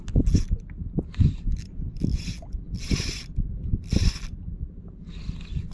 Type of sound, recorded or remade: recorded